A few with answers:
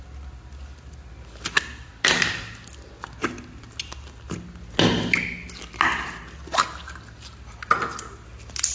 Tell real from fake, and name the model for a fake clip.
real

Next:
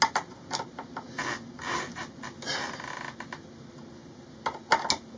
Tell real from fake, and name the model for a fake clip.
real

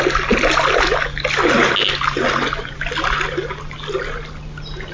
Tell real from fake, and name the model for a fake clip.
real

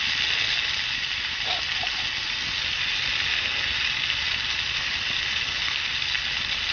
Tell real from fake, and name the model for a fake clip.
real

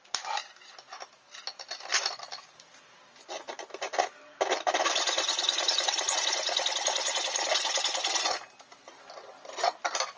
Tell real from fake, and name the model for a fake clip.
real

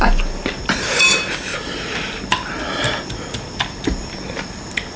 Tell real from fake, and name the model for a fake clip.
real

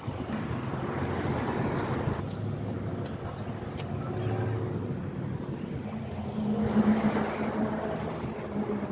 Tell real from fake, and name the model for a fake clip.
real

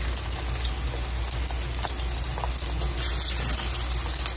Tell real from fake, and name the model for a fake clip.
real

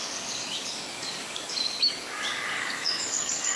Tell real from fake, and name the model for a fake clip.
fake, codec, DAC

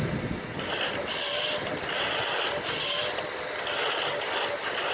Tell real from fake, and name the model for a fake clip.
real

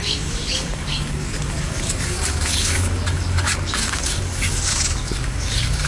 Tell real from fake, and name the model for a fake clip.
fake, codec, DAC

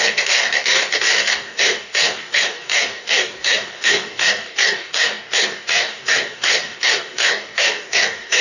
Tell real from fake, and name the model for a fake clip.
fake, codec, DAC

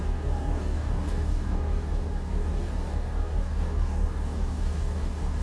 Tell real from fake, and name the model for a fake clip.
fake, codec, DAC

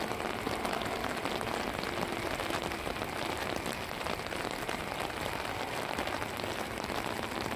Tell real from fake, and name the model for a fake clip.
real